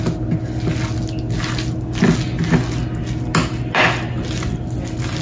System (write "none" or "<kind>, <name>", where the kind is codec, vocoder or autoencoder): none